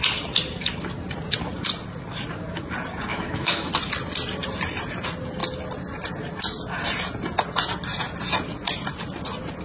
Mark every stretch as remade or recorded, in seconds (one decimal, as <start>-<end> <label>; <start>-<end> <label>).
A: 0.0-3.1 recorded; 3.1-3.7 remade; 3.7-9.6 recorded